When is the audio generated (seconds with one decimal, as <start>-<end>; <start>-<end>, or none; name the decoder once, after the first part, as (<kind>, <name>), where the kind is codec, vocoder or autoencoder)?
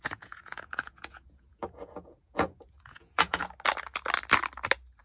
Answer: 0.0-3.4 (vocoder, Vocos)